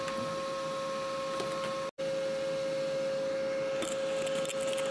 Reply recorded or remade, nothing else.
recorded